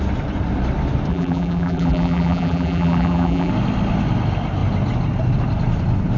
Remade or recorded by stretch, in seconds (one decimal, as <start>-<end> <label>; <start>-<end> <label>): 0.0-1.1 recorded; 1.1-3.5 remade; 3.5-6.2 recorded